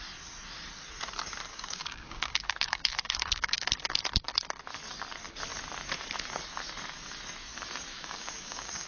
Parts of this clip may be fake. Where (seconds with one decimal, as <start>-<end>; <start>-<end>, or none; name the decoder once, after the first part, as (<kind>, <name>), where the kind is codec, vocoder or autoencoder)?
1.5-3.7 (codec, DAC); 7.9-8.9